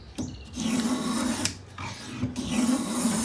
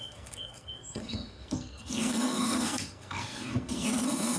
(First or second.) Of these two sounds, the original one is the first